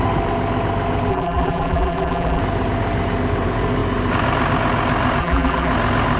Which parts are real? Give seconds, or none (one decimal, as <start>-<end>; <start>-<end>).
0.0-1.1; 2.4-5.2; 5.7-6.2

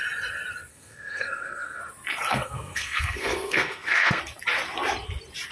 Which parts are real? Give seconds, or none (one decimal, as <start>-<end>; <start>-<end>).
0.0-0.7; 1.8-2.3; 4.2-5.5